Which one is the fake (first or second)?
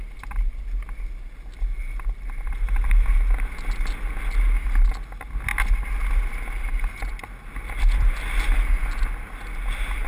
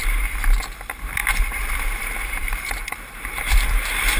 second